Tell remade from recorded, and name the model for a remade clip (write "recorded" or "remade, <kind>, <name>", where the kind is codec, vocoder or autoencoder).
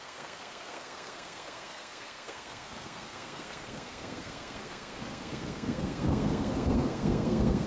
remade, codec, SNAC